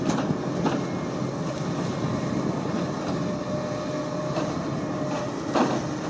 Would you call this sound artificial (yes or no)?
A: no